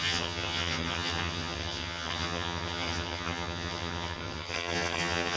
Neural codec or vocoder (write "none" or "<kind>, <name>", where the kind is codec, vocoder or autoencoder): vocoder, HiFi-GAN